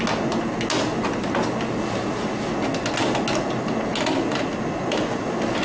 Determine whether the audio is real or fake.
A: real